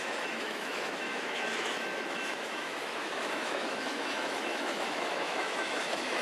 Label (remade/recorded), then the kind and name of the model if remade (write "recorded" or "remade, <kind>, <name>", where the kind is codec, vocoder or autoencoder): remade, autoencoder, DAC-VAE